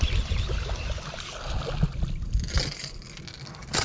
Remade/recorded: recorded